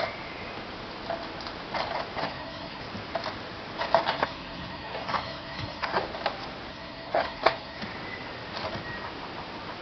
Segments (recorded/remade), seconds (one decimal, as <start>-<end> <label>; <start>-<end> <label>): 0.0-2.2 recorded; 2.2-2.8 remade; 2.8-4.1 recorded; 4.1-6.0 remade; 6.0-6.7 recorded; 6.7-7.8 remade; 7.8-9.8 recorded